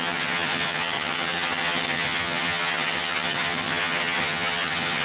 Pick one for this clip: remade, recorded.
remade